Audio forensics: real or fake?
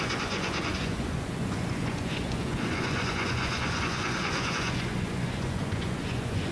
fake